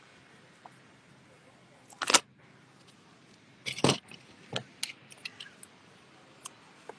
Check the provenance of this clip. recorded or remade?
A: recorded